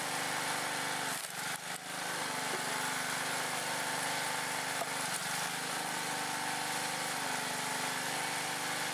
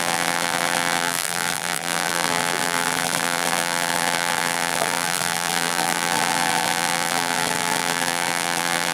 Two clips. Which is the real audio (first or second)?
first